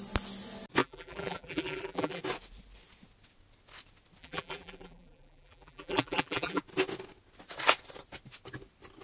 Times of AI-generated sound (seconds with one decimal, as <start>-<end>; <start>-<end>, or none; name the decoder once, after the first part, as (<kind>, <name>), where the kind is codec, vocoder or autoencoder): 0.8-2.2 (vocoder, BigVGAN v2); 4.2-6.6